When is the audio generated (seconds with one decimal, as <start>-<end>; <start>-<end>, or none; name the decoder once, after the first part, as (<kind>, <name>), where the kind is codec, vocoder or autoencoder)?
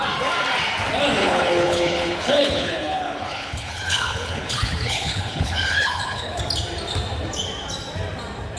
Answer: 1.2-6.4 (codec, HILCodec)